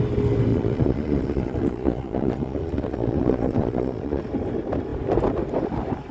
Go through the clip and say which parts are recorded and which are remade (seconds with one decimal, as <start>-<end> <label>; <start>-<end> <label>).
0.0-0.5 recorded; 0.5-4.2 remade; 4.2-6.1 recorded